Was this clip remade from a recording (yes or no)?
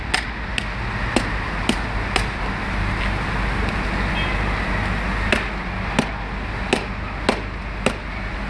no